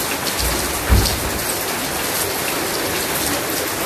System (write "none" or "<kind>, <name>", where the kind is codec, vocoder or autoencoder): none